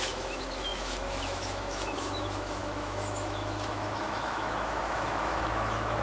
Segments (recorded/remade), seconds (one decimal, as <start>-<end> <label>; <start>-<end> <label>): 0.0-6.0 remade